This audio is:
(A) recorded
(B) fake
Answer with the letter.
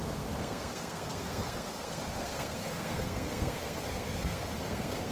B